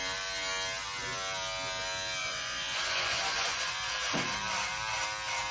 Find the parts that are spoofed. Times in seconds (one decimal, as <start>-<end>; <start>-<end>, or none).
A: 2.2-3.9